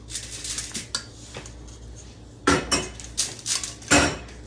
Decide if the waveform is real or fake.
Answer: real